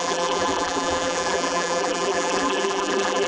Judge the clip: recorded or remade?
remade